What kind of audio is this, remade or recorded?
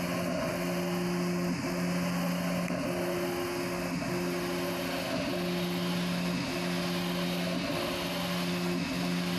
recorded